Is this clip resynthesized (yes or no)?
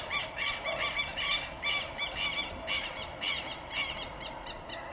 no